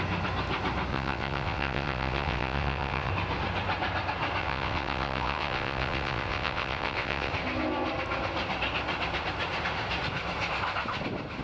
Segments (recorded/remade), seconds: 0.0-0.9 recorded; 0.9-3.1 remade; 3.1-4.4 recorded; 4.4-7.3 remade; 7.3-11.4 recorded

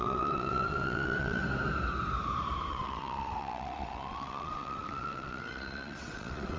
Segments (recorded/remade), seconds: 0.0-1.4 remade; 1.4-2.7 recorded; 2.7-6.6 remade

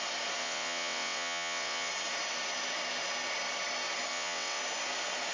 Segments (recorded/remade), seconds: 0.0-0.4 recorded; 0.4-1.9 remade; 1.9-4.1 recorded; 4.1-4.6 remade; 4.6-5.3 recorded

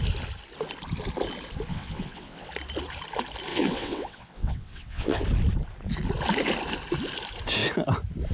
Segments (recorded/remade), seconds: 0.0-1.7 recorded; 1.7-2.5 remade; 2.5-3.5 recorded; 3.5-5.2 remade; 5.2-8.3 recorded

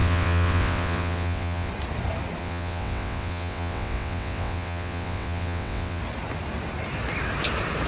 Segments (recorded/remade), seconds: 0.0-1.7 remade; 1.7-2.4 recorded; 2.4-6.0 remade; 6.0-7.9 recorded

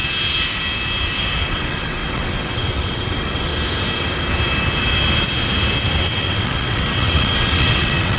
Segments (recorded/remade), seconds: 0.0-1.5 recorded; 1.5-3.5 remade; 3.5-5.9 recorded; 5.9-8.2 remade

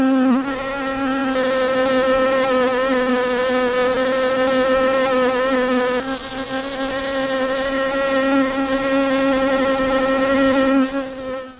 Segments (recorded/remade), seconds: 0.0-11.6 recorded